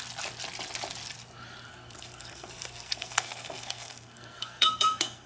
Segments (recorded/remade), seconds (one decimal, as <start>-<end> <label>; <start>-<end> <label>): 0.0-1.7 recorded; 1.7-5.3 remade